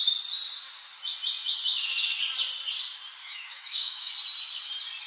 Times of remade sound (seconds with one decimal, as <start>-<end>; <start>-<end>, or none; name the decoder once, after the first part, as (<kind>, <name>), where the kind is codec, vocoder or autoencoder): 3.2-4.1 (autoencoder, DAC-VAE)